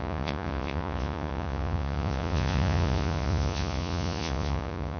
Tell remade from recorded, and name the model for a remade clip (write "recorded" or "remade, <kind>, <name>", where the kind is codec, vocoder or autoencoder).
remade, vocoder, Vocos